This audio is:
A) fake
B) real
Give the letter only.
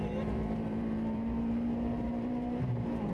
A